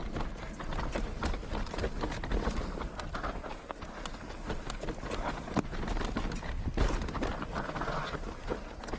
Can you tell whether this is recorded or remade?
recorded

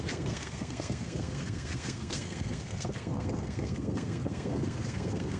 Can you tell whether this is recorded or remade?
remade